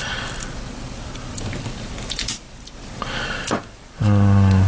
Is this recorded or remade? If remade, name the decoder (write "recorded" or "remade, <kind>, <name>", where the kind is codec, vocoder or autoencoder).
remade, vocoder, BigVGAN v2